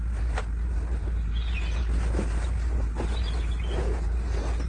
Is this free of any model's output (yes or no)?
yes